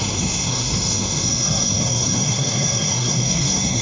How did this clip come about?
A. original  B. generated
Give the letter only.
B